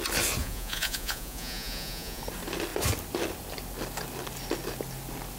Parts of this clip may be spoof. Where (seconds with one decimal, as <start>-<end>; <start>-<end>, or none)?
0.4-2.2